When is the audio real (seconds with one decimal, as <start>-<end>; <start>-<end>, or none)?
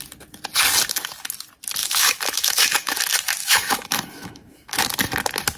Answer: 0.0-1.8; 2.9-3.4; 4.8-5.6